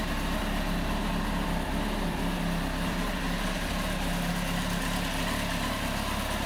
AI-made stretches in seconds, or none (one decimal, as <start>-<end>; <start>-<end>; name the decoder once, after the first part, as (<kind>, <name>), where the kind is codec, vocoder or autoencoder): 0.4-4.3 (vocoder, BigVGAN v2)